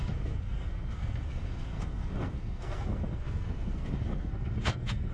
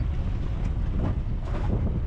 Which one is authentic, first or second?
second